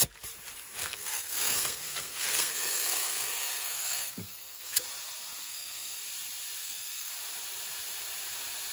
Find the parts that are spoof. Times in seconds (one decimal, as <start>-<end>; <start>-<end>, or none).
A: 0.8-4.8; 5.4-6.0; 6.6-7.1